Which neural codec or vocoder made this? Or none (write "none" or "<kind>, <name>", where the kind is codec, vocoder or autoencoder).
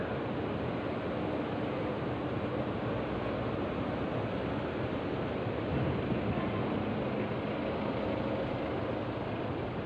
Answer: none